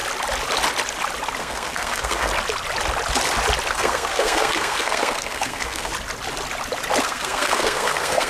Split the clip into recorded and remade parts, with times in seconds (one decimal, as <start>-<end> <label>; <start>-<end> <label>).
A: 0.0-1.4 recorded; 1.4-2.3 remade; 2.3-3.7 recorded; 3.7-5.9 remade; 5.9-7.0 recorded; 7.0-8.3 remade